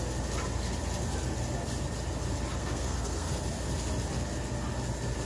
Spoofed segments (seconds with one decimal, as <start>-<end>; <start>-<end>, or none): 2.6-3.4